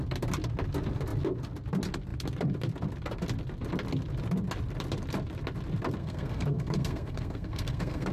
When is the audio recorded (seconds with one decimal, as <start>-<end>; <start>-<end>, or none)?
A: 0.0-6.0